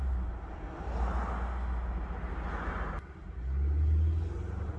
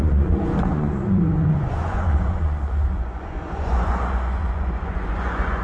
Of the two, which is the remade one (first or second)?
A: second